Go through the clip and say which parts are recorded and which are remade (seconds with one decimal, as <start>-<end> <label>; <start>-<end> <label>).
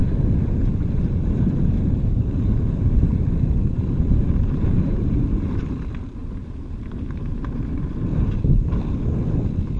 0.0-5.2 remade; 5.2-6.2 recorded; 6.2-8.5 remade; 8.5-9.8 recorded